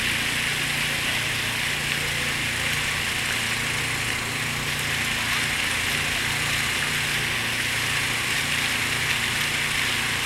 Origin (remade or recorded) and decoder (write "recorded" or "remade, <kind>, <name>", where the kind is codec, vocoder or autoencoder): recorded